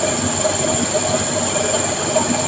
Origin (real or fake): real